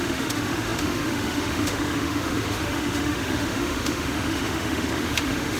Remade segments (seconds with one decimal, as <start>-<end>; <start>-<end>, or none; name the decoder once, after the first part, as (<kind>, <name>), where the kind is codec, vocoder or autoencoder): 0.0-5.6 (autoencoder, DAC-VAE)